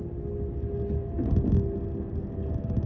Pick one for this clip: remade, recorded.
recorded